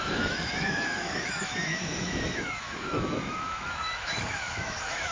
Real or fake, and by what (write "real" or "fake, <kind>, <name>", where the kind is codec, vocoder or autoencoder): fake, autoencoder, DAC-VAE